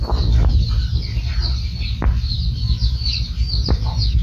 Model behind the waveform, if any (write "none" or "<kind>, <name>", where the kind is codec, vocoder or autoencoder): none